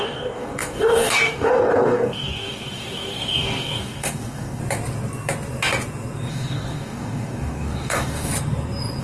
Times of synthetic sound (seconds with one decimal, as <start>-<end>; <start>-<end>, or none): 0.0-4.6; 6.3-8.3